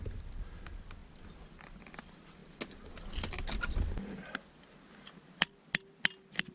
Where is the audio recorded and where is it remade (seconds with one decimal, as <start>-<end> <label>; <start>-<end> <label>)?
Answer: 0.0-6.5 recorded